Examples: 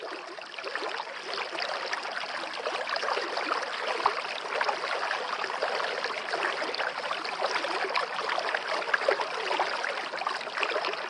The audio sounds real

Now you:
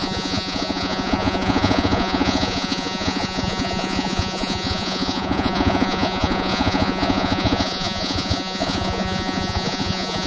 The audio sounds fake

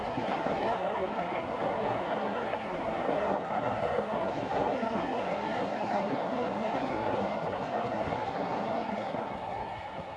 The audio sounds fake